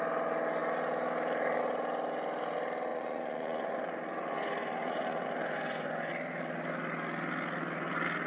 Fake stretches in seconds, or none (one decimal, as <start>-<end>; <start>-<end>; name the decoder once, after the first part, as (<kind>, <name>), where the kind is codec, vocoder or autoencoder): 2.9-6.1 (vocoder, Vocos)